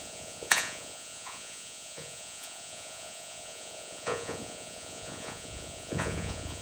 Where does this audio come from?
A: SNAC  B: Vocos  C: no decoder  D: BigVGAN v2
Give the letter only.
B